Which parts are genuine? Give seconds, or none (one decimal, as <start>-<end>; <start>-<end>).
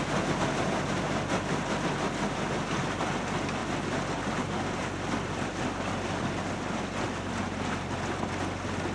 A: 0.0-8.9